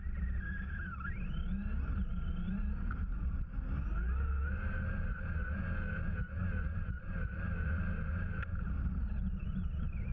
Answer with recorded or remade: recorded